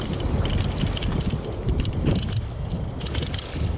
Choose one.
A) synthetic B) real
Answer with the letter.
B